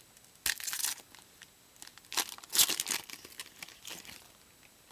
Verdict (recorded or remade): recorded